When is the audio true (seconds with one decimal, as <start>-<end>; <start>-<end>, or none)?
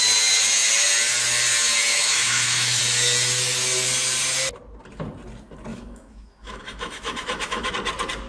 0.0-1.9; 2.8-5.7; 7.7-8.3